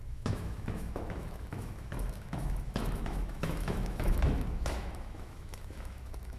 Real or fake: fake